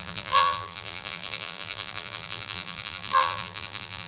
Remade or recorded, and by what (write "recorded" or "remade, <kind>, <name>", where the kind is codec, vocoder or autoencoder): remade, vocoder, BigVGAN v2